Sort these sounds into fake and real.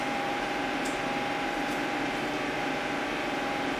fake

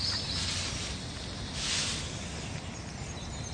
real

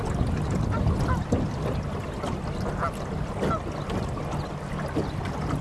real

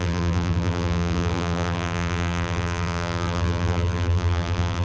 fake